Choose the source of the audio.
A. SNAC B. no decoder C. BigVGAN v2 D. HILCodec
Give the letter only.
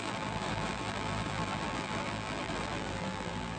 C